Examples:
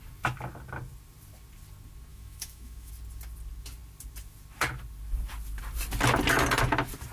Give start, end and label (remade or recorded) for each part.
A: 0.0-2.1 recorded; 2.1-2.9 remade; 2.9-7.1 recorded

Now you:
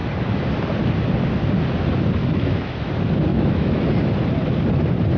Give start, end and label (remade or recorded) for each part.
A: 0.0-2.2 recorded; 2.2-2.9 remade; 2.9-3.3 recorded; 3.3-3.8 remade; 3.8-5.2 recorded